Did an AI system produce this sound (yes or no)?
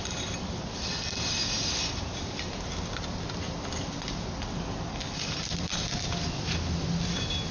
no